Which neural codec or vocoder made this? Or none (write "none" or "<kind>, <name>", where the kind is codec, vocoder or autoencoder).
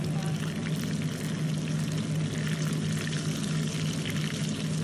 none